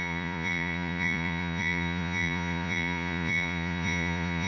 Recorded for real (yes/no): no